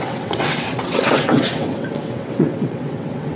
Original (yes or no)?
no